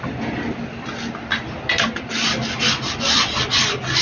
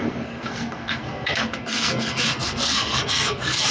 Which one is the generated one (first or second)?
second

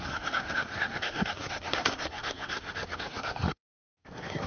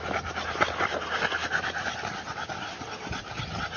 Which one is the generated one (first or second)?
first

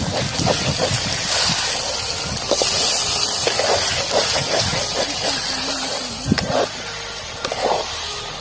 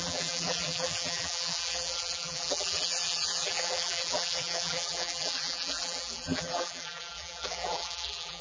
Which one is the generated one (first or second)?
second